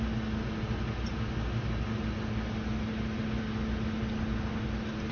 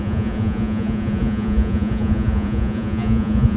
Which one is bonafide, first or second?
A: first